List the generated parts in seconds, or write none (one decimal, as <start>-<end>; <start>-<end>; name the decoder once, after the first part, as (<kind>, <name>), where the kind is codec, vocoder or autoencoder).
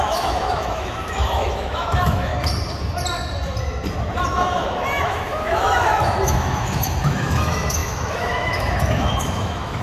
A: 0.0-2.3 (autoencoder, DAC-VAE); 4.3-9.8